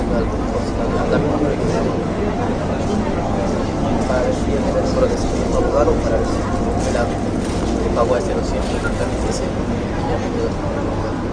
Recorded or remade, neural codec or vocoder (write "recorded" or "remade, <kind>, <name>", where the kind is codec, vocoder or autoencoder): recorded